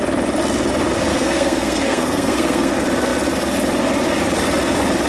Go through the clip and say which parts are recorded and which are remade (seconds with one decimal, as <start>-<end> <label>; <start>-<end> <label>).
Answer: 0.0-1.1 recorded; 1.1-2.7 remade; 2.7-5.1 recorded